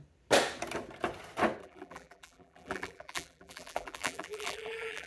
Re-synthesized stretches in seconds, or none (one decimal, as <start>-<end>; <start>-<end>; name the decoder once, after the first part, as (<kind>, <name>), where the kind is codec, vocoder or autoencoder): 1.6-5.1 (vocoder, BigVGAN v2)